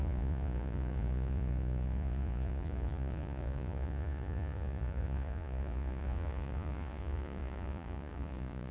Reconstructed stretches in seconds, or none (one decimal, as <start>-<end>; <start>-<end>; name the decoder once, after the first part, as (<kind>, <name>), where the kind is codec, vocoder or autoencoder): 0.0-8.7 (vocoder, Vocos)